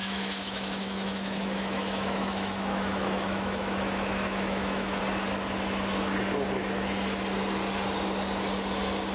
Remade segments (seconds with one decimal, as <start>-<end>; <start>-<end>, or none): 0.0-5.0